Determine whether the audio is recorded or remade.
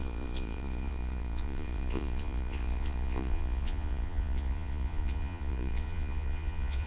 remade